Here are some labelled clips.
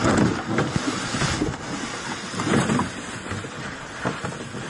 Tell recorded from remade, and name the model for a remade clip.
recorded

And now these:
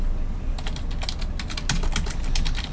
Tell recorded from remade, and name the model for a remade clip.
recorded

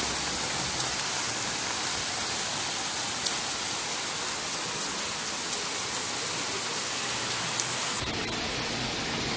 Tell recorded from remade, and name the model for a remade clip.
recorded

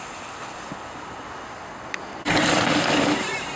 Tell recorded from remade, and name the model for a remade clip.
recorded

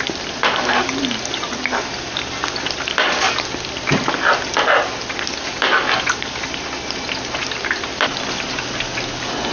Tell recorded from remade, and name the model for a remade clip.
recorded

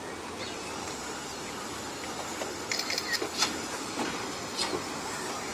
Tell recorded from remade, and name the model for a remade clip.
recorded